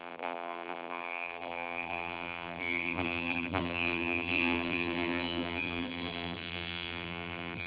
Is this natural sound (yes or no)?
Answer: no